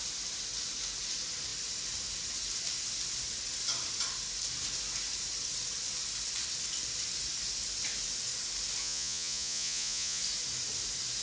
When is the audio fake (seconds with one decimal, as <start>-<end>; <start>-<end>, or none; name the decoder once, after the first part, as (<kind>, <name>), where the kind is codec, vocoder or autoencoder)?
8.8-10.2 (vocoder, Vocos)